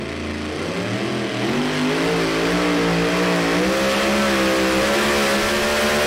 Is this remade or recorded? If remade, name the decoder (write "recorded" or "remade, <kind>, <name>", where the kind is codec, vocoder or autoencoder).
recorded